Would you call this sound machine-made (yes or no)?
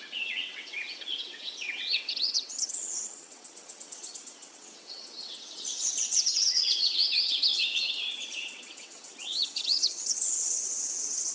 yes